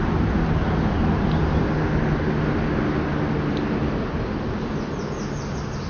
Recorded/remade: recorded